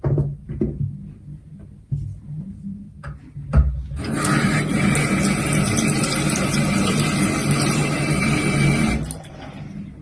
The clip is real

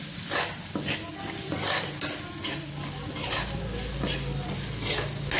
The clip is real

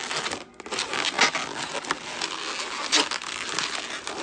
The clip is real